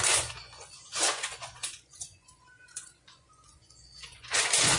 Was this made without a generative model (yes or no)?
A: no